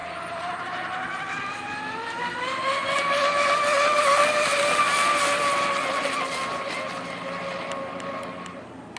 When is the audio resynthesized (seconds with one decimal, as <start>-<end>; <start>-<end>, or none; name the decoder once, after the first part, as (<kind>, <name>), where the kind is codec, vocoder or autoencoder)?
none